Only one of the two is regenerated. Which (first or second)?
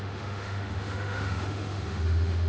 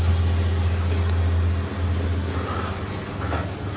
first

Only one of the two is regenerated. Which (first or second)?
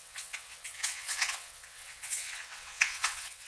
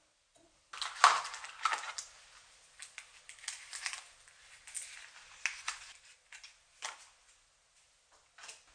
first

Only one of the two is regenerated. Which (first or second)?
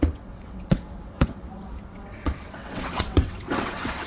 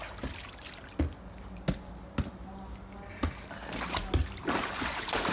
first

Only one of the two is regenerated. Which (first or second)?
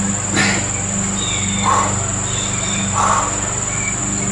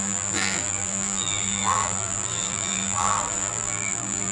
second